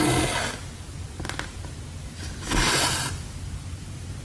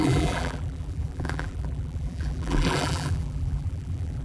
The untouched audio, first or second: first